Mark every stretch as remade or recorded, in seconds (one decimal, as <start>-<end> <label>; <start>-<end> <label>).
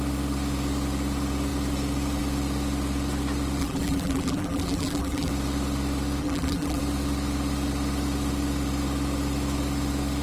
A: 0.0-3.6 recorded; 3.6-5.3 remade; 5.3-6.2 recorded; 6.2-6.8 remade; 6.8-10.2 recorded